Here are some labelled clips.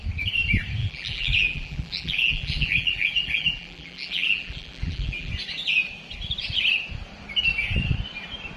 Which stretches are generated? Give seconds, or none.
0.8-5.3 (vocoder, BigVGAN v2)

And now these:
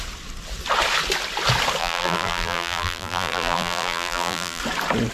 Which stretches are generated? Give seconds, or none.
1.8-4.6 (vocoder, BigVGAN v2)

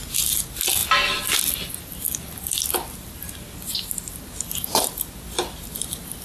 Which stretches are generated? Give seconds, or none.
none

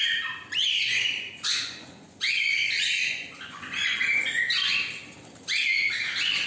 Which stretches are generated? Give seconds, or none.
0.6-4.4 (vocoder, Vocos)